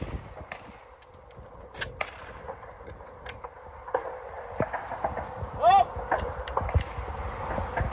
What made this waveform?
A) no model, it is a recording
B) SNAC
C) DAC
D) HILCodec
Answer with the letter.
A